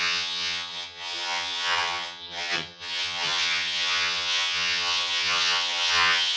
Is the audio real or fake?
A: fake